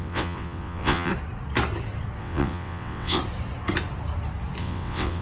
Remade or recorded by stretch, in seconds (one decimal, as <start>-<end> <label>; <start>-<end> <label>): 0.0-1.1 remade; 1.1-2.2 recorded; 2.2-3.2 remade; 3.2-4.6 recorded; 4.6-5.2 remade